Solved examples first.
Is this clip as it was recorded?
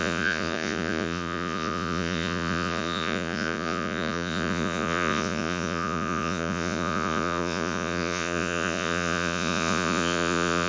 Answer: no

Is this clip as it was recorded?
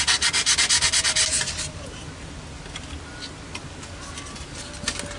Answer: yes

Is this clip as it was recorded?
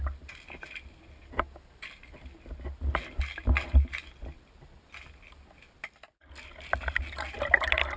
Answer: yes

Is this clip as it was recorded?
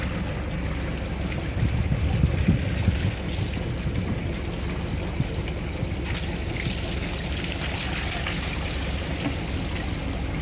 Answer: yes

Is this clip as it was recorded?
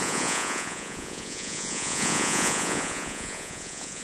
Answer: no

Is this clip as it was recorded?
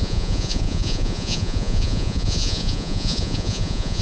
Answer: no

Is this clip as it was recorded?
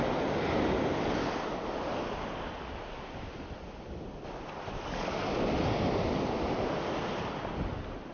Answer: yes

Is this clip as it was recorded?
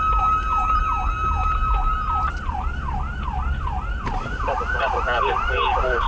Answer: yes